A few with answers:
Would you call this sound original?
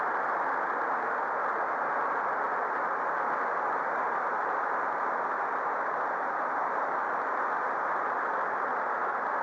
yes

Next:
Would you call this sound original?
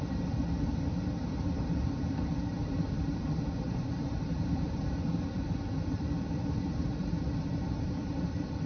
no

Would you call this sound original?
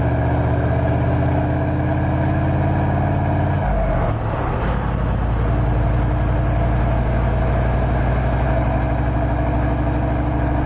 yes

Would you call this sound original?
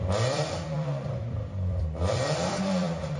no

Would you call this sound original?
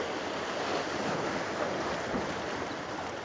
yes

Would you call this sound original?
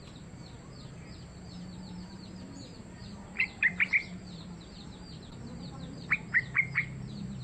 no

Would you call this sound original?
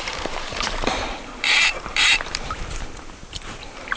no